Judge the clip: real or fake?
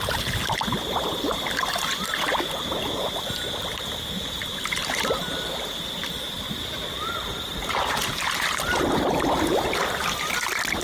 real